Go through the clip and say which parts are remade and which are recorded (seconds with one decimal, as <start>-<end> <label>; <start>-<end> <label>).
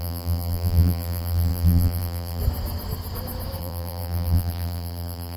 0.0-2.4 remade; 2.4-3.6 recorded; 3.6-5.4 remade